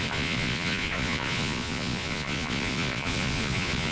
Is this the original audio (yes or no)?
no